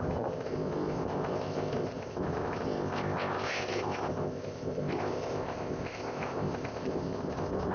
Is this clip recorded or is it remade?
remade